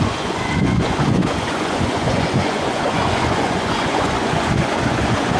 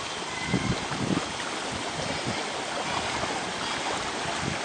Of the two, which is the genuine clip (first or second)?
second